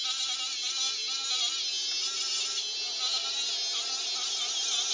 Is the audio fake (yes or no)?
no